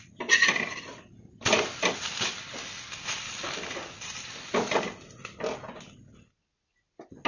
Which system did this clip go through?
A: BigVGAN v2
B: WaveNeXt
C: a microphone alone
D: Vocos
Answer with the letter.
C